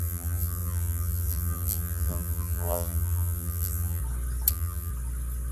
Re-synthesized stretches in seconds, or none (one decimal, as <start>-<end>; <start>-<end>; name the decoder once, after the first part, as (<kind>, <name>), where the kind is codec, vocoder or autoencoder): 0.0-4.0 (vocoder, BigVGAN v2); 4.5-4.9